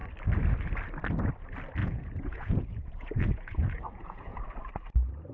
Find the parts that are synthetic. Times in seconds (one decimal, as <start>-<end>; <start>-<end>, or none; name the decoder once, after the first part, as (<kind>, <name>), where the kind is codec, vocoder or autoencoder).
1.8-4.4 (vocoder, Vocos)